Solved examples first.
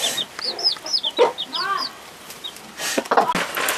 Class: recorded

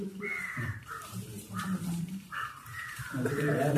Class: remade